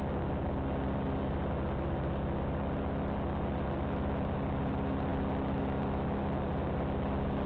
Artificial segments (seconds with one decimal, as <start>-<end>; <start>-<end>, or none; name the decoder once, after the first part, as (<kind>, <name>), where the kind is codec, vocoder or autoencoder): none